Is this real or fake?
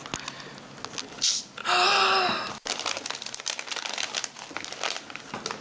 real